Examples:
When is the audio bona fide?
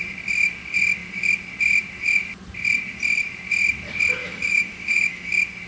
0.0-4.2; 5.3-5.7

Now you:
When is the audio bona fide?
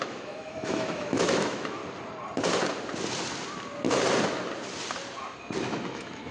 1.8-5.6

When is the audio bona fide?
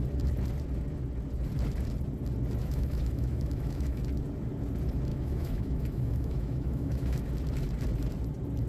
0.0-2.6; 4.0-5.1; 7.2-8.7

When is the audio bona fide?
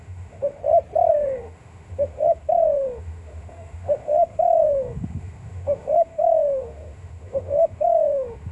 0.6-1.1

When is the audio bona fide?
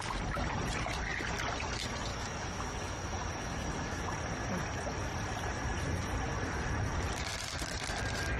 0.0-2.1; 4.1-8.4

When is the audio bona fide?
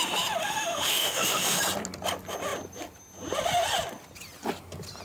0.0-0.4; 1.6-5.0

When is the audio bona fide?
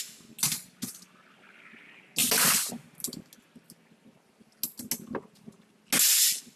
0.0-6.6